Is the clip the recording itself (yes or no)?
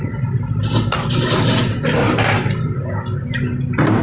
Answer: yes